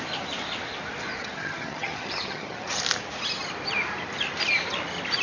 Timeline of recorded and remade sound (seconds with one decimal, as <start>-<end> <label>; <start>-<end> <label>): 0.0-1.2 recorded; 1.2-2.8 remade; 2.8-5.2 recorded